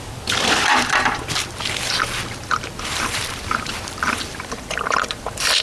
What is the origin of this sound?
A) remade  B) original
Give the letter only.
A